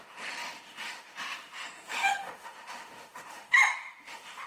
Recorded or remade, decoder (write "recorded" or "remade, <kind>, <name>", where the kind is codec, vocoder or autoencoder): remade, autoencoder, DAC-VAE